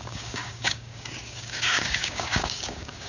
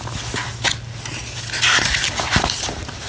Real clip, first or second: second